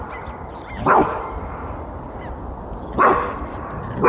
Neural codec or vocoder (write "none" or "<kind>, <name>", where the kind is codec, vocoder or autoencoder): none